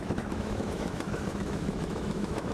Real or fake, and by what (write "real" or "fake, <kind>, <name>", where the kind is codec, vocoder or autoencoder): fake, autoencoder, DAC-VAE